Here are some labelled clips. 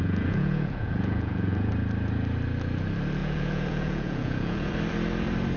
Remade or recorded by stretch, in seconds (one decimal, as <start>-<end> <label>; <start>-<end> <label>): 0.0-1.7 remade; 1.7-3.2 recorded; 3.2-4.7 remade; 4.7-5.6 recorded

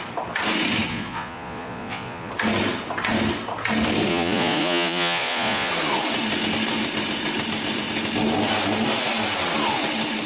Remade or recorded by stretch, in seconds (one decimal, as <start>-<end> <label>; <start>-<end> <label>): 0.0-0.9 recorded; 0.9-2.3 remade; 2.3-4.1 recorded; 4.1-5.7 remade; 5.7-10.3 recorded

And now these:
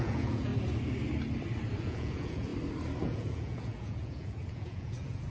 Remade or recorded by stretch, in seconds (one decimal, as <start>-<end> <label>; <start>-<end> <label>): 0.0-0.5 remade; 0.5-1.8 recorded; 1.8-2.5 remade; 2.5-3.0 recorded; 3.0-5.3 remade

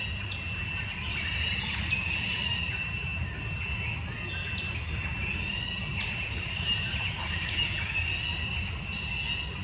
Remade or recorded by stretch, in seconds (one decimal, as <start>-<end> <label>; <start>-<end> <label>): 0.0-2.5 recorded; 2.5-3.3 remade; 3.3-5.9 recorded; 5.9-7.5 remade; 7.5-8.3 recorded; 8.3-9.1 remade; 9.1-9.6 recorded

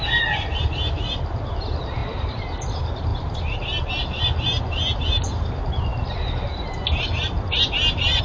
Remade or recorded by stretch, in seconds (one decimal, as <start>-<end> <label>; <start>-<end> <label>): 0.0-8.2 recorded

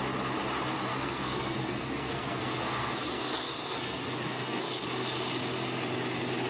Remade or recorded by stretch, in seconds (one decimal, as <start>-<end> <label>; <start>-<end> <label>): 0.0-0.9 recorded; 0.9-4.8 remade; 4.8-6.5 recorded